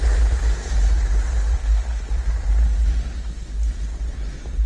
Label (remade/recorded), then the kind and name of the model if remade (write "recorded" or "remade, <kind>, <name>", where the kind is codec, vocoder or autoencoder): recorded